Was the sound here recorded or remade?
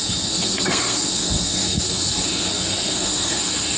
remade